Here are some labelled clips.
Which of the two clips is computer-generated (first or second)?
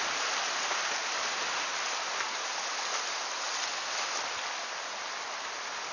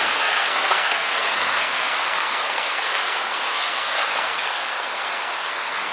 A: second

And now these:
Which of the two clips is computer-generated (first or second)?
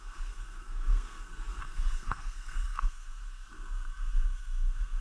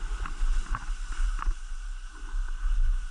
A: first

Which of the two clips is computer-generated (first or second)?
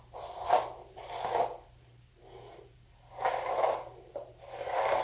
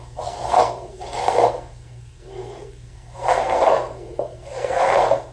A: second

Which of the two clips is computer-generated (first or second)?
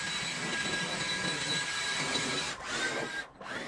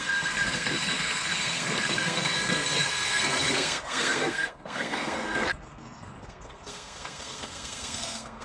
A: second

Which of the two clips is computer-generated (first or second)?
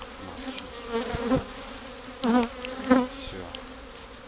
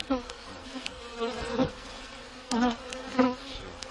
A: second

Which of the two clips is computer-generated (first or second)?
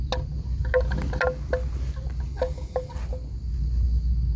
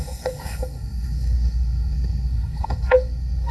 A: second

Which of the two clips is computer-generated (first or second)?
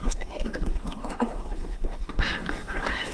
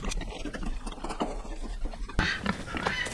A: first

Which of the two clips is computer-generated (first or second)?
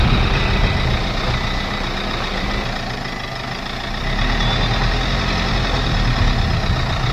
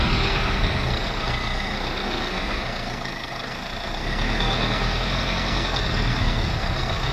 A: second